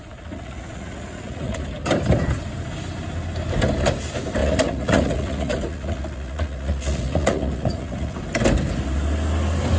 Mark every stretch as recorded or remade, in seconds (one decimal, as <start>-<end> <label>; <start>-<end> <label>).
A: 0.0-1.6 remade; 1.6-4.4 recorded; 4.4-8.2 remade; 8.2-9.8 recorded

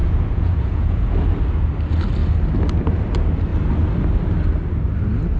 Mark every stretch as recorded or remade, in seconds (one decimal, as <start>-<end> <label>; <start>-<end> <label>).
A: 0.0-1.1 remade; 1.1-5.4 recorded

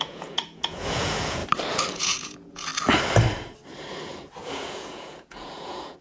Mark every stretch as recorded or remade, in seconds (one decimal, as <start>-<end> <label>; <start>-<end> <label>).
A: 0.0-1.4 remade; 1.4-2.0 recorded; 2.0-2.7 remade; 2.7-4.4 recorded; 4.4-6.0 remade

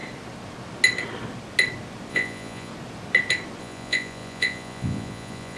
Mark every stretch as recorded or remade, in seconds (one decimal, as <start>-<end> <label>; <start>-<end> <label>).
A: 0.0-2.1 recorded; 2.1-2.7 remade; 2.7-3.6 recorded; 3.6-5.6 remade

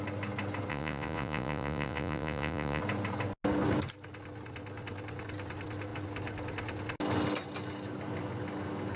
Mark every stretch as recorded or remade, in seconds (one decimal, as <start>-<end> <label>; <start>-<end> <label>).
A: 0.0-0.7 recorded; 0.7-2.8 remade; 2.8-9.0 recorded